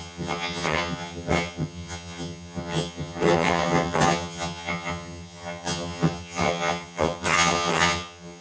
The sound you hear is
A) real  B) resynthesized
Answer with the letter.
B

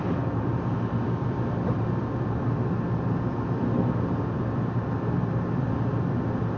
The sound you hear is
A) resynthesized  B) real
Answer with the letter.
B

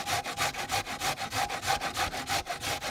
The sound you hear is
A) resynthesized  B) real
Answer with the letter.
B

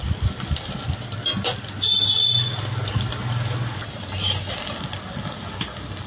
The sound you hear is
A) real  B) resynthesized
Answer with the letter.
A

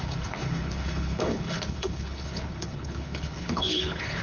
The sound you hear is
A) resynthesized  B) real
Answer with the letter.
A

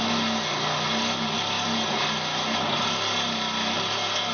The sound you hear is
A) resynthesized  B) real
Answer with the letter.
B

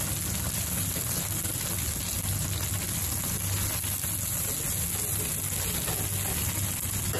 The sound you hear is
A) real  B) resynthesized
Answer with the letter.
A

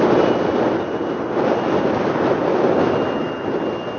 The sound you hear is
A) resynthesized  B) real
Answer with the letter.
B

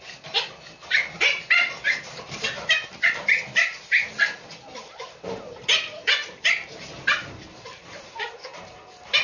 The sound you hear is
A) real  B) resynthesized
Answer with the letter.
A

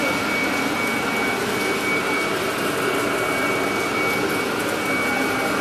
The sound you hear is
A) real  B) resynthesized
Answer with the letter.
A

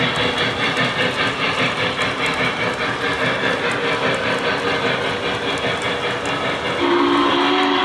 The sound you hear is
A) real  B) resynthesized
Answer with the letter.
A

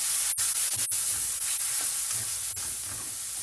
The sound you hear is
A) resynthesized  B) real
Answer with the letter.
B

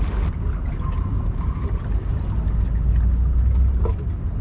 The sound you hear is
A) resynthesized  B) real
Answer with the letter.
B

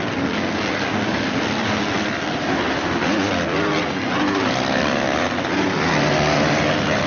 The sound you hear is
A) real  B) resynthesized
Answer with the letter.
A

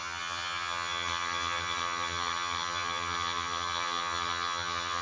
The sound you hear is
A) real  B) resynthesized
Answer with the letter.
B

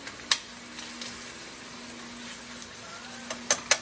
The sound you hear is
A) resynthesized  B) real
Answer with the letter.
B